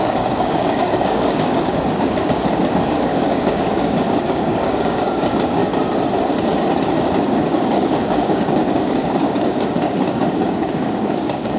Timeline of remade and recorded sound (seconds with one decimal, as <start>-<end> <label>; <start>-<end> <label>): 0.0-5.6 remade; 5.6-7.0 recorded; 7.0-11.6 remade